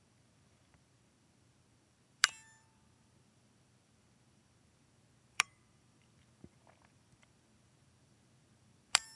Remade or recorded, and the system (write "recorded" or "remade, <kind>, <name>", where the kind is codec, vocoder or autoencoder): remade, vocoder, BigVGAN v2